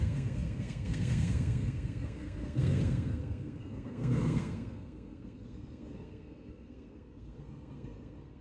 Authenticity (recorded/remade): remade